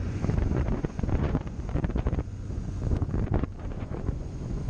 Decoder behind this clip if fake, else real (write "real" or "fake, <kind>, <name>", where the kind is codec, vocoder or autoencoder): fake, vocoder, Vocos